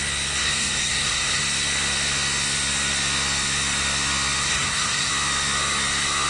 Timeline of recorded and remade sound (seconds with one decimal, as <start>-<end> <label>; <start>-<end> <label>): 0.0-0.4 recorded; 0.4-1.4 remade; 1.4-4.5 recorded; 4.5-5.1 remade; 5.1-6.3 recorded